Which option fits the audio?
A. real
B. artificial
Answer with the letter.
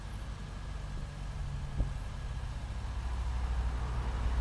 A